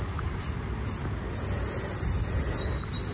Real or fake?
real